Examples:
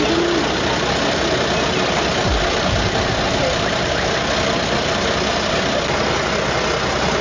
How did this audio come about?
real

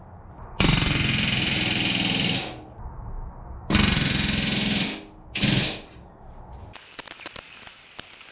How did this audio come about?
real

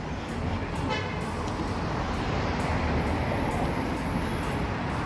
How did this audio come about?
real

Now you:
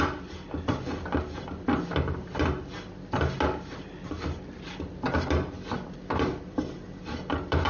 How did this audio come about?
real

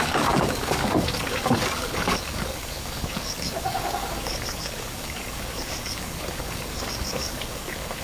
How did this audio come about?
fake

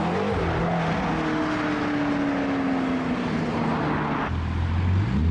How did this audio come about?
real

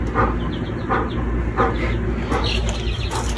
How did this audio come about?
real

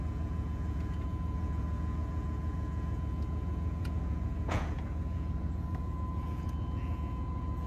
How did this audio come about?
fake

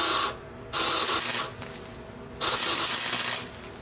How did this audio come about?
real